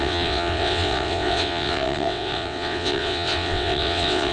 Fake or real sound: fake